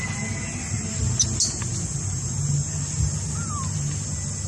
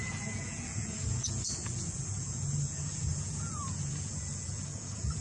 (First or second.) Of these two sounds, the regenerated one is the second